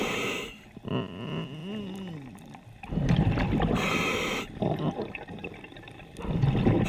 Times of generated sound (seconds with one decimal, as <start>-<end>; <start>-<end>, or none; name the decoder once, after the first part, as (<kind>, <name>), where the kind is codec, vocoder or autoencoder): none